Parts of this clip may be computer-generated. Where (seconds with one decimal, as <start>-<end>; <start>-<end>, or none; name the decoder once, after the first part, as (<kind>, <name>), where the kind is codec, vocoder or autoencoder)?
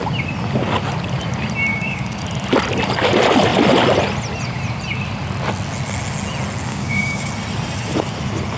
1.7-2.2 (codec, DAC); 6.7-7.3